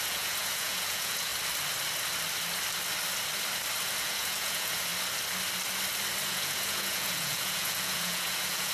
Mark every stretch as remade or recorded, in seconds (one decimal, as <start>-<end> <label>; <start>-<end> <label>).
0.0-1.3 remade; 1.3-4.0 recorded; 4.0-4.9 remade; 4.9-6.3 recorded; 6.3-8.7 remade